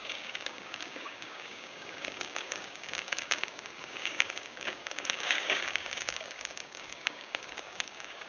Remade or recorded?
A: remade